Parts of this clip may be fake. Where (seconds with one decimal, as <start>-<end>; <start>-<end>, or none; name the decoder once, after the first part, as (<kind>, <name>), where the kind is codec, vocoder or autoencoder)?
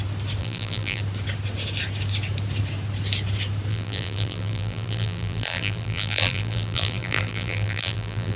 0.4-1.0 (vocoder, BigVGAN v2); 3.7-8.4